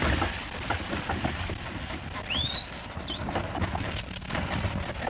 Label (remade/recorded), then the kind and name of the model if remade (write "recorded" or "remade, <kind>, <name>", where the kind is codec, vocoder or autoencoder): recorded